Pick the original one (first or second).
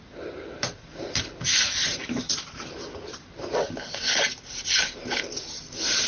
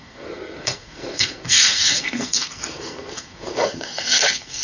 first